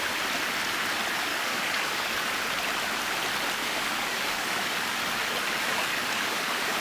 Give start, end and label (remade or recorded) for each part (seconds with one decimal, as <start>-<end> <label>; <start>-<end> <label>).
0.0-1.3 recorded; 1.3-2.3 remade; 2.3-3.6 recorded; 3.6-6.8 remade